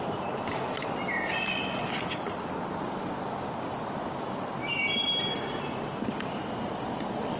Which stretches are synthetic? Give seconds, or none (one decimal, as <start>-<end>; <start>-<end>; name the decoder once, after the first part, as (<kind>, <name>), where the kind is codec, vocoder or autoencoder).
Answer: none